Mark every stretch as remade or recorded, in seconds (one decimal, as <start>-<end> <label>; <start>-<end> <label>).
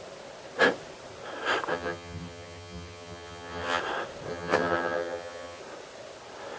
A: 0.0-1.7 recorded; 1.7-3.8 remade; 3.8-4.3 recorded; 4.3-5.6 remade; 5.6-6.6 recorded